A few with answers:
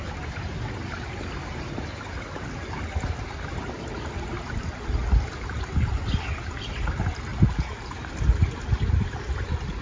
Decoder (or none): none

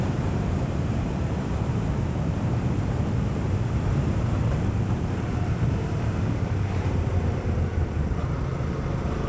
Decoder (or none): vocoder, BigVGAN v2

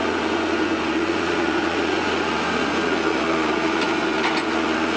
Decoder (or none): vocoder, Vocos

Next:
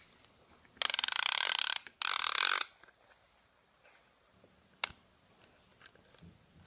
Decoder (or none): none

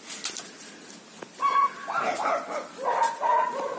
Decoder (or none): none